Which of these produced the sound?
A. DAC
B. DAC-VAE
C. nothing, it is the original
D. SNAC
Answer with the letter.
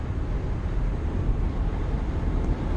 C